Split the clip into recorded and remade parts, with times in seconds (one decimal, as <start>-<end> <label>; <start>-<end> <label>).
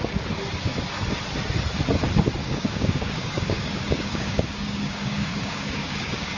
0.0-2.4 recorded; 2.4-6.4 remade